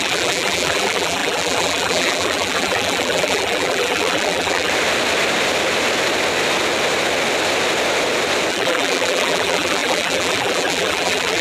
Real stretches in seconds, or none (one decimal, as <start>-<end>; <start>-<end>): 4.7-8.5